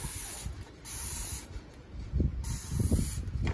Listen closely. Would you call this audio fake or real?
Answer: real